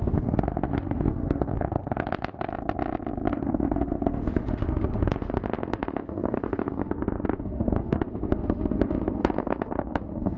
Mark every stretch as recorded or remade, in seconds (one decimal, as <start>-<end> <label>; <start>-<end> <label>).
0.0-2.5 remade; 2.5-3.3 recorded; 3.3-10.4 remade